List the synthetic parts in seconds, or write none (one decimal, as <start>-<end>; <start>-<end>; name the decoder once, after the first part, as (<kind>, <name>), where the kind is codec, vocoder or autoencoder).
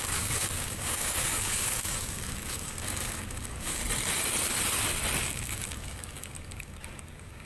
0.0-3.8 (codec, DAC); 5.2-7.5